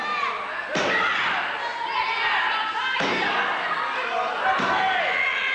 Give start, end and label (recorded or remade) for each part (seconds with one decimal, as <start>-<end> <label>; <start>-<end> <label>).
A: 0.0-5.5 recorded